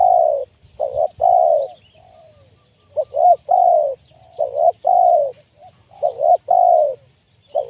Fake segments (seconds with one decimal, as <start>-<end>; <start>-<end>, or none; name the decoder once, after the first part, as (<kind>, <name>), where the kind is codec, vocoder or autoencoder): 3.3-6.4 (vocoder, BigVGAN v2)